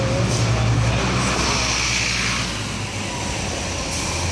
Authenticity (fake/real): real